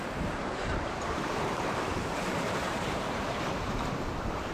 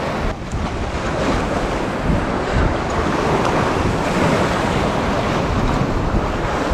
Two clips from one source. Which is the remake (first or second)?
first